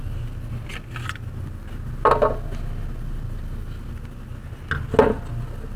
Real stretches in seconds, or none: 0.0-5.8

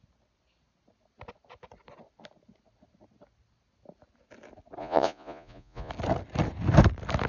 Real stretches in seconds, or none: 0.0-4.8; 5.9-7.3